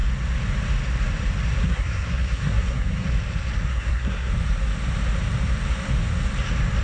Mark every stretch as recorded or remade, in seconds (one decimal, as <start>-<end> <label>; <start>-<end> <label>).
0.0-1.6 recorded; 1.6-3.1 remade; 3.1-3.7 recorded; 3.7-4.3 remade; 4.3-6.8 recorded